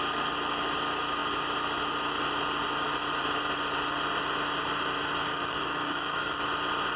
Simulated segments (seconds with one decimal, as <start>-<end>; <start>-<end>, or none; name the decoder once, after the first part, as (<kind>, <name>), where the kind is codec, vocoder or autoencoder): 5.3-6.4 (codec, DAC)